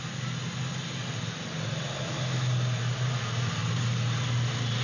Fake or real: real